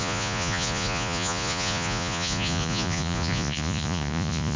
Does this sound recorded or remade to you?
remade